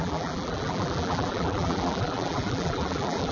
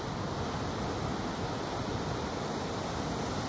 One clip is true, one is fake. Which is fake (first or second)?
first